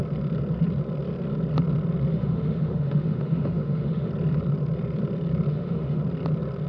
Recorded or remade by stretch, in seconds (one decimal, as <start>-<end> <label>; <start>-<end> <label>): 0.0-2.1 recorded; 2.1-4.1 remade; 4.1-5.5 recorded; 5.5-6.0 remade; 6.0-6.7 recorded